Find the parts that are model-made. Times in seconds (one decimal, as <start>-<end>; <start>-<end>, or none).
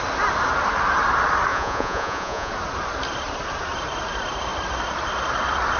1.5-2.5